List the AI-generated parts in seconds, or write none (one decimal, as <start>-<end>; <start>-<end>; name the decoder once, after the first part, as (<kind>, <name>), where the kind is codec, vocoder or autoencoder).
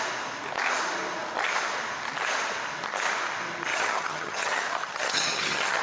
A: 3.7-5.8 (vocoder, HiFi-GAN)